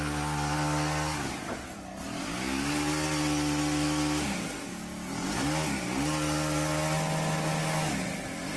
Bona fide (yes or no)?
yes